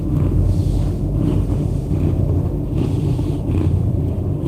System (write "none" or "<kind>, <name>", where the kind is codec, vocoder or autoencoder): autoencoder, DAC-VAE